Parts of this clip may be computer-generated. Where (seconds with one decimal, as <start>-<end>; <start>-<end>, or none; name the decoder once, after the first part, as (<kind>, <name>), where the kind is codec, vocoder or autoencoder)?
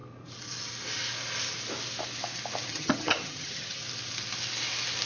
2.7-3.8 (vocoder, HiFi-GAN)